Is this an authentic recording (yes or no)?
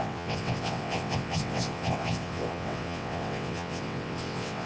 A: no